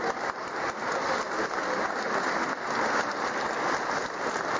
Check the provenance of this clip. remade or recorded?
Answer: recorded